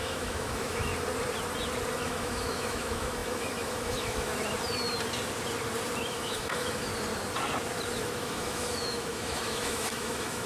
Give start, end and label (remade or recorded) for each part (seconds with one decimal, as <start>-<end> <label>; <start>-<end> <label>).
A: 0.0-0.9 remade; 0.9-1.9 recorded; 1.9-4.3 remade; 4.3-6.0 recorded; 6.0-6.9 remade; 6.9-8.0 recorded; 8.0-10.5 remade